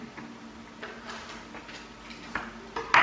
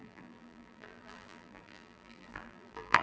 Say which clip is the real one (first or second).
first